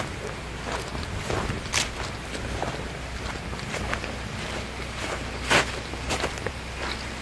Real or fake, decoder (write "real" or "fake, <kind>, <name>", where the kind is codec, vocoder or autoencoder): real